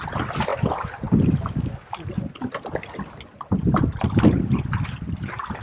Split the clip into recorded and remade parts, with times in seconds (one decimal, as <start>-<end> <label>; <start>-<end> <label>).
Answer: 0.0-5.6 recorded